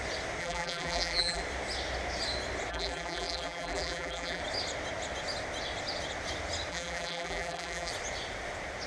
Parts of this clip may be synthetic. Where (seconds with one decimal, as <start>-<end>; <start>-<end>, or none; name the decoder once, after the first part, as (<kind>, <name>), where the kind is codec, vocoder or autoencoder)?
0.4-1.4 (vocoder, BigVGAN v2); 2.7-4.4; 6.7-7.9